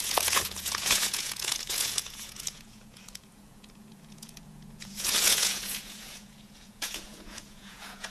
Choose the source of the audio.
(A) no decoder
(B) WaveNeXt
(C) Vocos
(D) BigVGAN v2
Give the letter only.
C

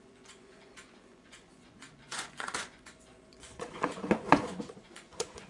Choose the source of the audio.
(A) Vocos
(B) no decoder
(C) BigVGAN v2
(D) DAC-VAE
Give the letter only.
A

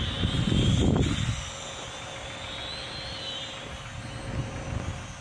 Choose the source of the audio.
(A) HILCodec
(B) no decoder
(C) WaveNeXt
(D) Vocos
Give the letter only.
B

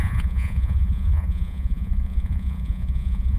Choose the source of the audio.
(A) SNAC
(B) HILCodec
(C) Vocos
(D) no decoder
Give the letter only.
C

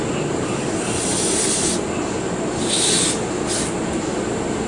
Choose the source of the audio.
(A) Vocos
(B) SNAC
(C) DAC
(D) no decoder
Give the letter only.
D